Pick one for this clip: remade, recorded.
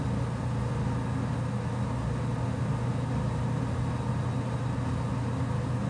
recorded